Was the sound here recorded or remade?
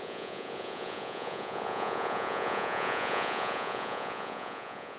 remade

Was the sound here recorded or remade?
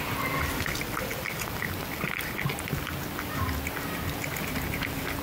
recorded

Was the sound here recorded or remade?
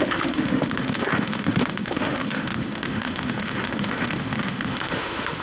remade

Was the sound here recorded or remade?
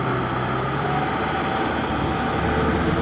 recorded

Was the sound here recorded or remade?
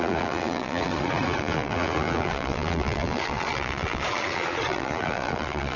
remade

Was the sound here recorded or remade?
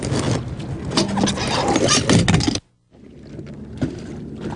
recorded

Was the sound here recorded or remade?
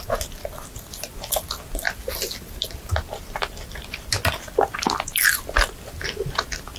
recorded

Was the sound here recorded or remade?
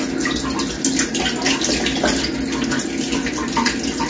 recorded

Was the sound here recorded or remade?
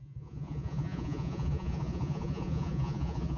remade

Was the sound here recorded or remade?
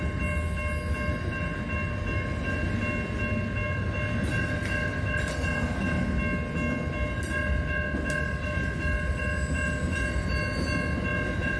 recorded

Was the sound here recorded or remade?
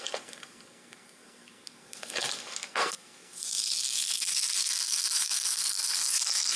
remade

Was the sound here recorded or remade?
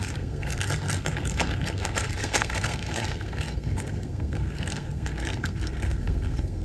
remade